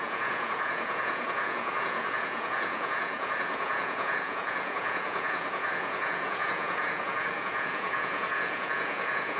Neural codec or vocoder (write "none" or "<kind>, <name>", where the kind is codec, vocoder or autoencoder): vocoder, Vocos